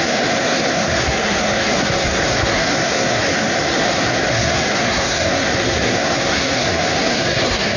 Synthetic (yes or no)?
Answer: yes